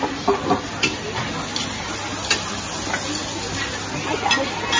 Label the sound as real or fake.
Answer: real